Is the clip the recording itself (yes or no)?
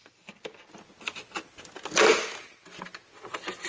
yes